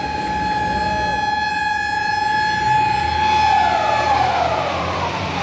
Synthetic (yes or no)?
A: no